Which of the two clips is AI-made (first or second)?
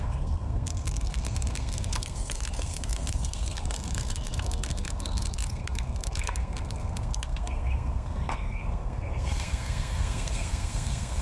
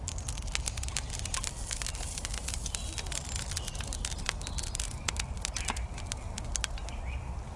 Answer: first